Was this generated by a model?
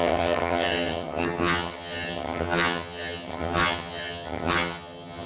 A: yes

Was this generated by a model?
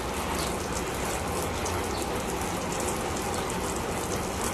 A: no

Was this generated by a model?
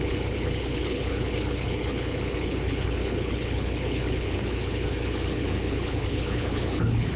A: yes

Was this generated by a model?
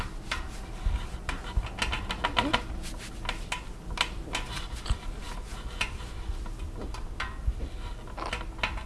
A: no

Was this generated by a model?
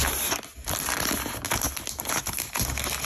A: no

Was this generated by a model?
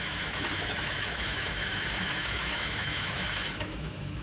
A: yes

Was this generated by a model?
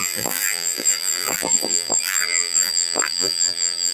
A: yes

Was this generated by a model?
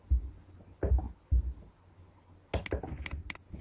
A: no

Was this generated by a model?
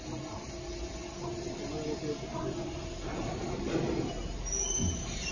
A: no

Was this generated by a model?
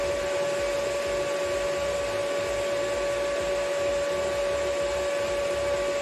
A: no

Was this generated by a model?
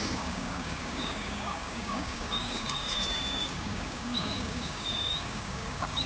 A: yes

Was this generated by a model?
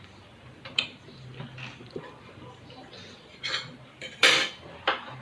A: yes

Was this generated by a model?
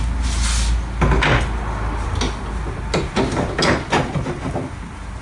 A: no